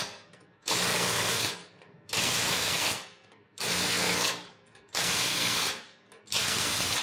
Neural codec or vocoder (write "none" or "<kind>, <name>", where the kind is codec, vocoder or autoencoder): codec, SNAC